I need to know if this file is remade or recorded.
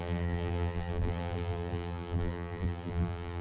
remade